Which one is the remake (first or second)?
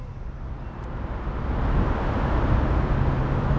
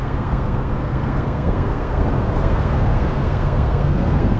second